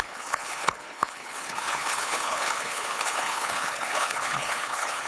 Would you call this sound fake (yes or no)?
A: yes